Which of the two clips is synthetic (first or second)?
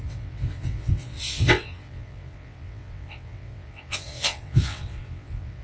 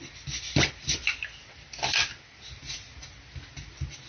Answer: first